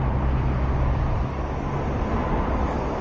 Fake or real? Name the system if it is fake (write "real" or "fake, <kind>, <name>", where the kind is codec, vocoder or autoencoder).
real